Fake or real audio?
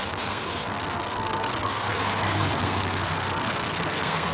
fake